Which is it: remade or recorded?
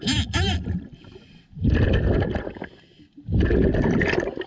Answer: recorded